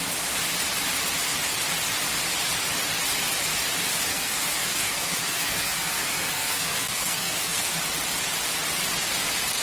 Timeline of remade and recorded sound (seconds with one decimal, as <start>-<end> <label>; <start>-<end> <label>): 0.0-4.1 recorded; 4.1-7.7 remade; 7.7-9.6 recorded